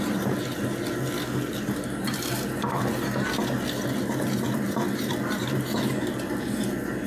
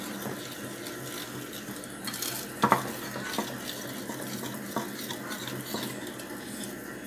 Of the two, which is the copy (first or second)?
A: first